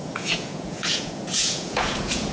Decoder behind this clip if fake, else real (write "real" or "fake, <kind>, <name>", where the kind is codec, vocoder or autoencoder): fake, vocoder, Vocos